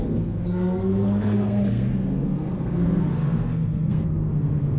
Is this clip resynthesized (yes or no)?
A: yes